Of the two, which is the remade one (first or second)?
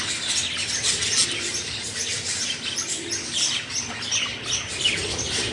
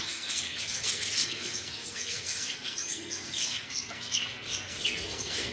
second